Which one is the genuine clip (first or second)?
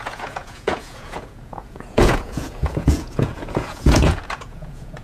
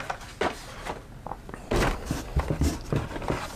second